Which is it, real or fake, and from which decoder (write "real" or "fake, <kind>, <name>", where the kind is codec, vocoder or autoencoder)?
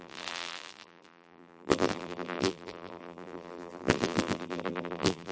fake, vocoder, BigVGAN v2